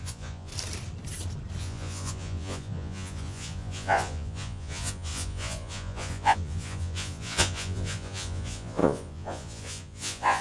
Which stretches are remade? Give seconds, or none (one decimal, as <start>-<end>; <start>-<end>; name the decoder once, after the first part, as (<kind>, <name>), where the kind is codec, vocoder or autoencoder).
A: 0.0-0.5 (vocoder, Vocos); 1.6-10.4